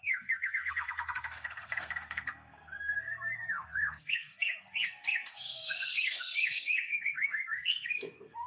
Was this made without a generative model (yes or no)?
no